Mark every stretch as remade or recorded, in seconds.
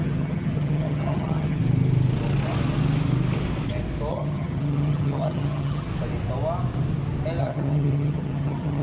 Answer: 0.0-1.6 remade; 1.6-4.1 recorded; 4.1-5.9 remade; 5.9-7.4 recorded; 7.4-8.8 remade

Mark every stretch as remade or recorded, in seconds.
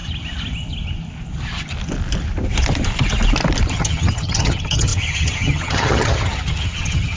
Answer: 0.0-3.7 recorded; 3.7-7.2 remade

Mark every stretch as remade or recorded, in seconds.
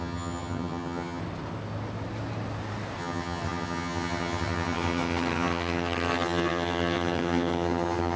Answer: 0.0-1.2 remade; 1.2-3.0 recorded; 3.0-8.2 remade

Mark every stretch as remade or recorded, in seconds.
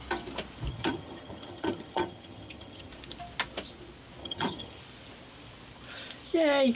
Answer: 0.0-0.7 recorded; 0.7-2.9 remade; 2.9-4.2 recorded; 4.2-4.8 remade; 4.8-6.7 recorded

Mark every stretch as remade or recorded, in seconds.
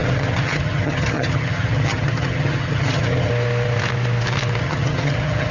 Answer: 0.0-3.3 remade; 3.3-4.6 recorded; 4.6-5.5 remade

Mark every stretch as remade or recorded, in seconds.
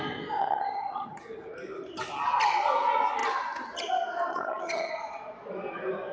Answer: 0.0-0.4 recorded; 0.4-1.2 remade; 1.2-4.3 recorded; 4.3-4.9 remade; 4.9-6.1 recorded